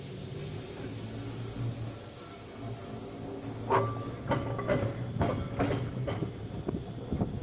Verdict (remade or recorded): recorded